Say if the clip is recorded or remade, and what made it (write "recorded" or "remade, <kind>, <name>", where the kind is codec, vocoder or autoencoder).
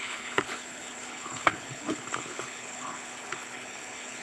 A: remade, codec, HILCodec